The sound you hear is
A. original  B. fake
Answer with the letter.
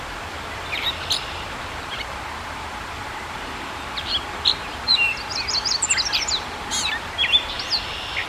B